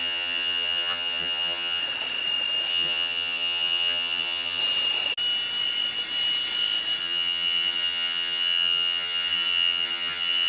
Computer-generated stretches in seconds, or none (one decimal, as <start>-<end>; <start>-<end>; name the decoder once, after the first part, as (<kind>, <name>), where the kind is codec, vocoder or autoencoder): 0.0-1.8 (vocoder, HiFi-GAN); 2.7-4.6; 7.0-10.5